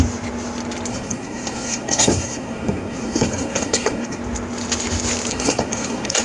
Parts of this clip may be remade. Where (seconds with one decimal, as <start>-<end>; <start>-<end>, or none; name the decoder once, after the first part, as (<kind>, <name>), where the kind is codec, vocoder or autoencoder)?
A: 0.9-4.2 (codec, SNAC); 5.3-6.2

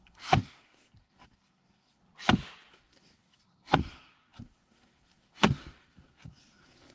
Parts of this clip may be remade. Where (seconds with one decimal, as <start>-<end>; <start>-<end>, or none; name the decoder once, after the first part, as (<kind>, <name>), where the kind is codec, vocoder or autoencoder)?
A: 0.0-2.0 (codec, SNAC); 2.7-6.9

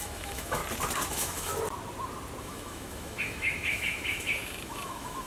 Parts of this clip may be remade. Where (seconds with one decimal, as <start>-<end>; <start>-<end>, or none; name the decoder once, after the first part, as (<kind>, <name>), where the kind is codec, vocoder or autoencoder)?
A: 0.0-0.6 (autoencoder, DAC-VAE); 1.1-1.5; 2.4-5.3

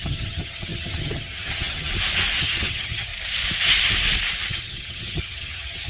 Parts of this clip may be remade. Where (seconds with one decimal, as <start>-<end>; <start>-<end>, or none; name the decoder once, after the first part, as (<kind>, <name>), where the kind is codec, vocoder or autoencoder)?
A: 0.0-1.9 (vocoder, HiFi-GAN); 2.4-3.1; 4.5-5.9

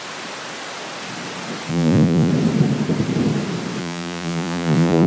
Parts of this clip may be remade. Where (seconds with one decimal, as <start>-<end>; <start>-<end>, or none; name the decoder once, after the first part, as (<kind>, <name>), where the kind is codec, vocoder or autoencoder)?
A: 1.7-2.3 (vocoder, Vocos); 3.8-5.1

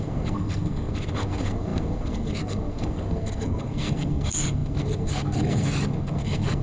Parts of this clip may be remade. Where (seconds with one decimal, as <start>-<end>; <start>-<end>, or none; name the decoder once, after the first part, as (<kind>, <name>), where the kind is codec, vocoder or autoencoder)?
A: 0.0-6.6 (codec, SNAC)